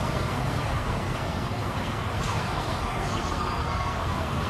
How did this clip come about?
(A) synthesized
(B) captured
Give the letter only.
A